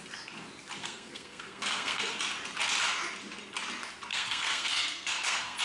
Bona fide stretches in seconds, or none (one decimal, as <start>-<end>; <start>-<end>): 0.0-0.8; 2.1-4.1